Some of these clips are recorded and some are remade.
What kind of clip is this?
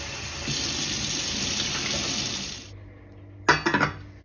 recorded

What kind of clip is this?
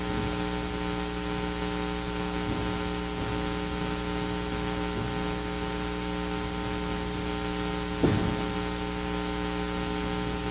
recorded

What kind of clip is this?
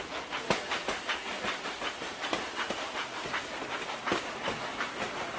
recorded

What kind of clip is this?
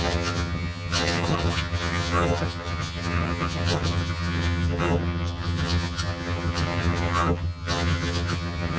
remade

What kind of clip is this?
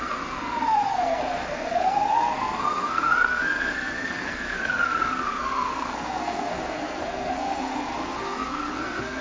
remade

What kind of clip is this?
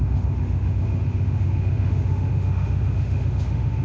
remade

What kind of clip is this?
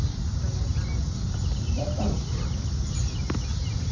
recorded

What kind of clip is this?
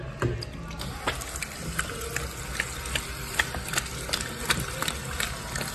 recorded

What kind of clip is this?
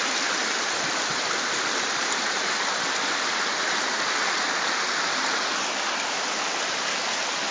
recorded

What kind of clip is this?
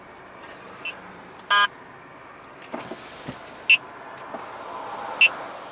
recorded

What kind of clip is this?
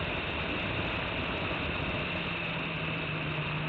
recorded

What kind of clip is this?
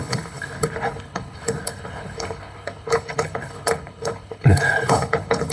remade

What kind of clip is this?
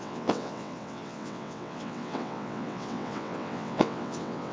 remade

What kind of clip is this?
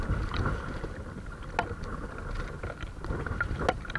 recorded